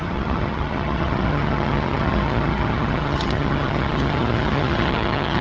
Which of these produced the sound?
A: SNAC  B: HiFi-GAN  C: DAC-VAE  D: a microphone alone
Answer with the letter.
B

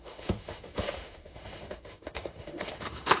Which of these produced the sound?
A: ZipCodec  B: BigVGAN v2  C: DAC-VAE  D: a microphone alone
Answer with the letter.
C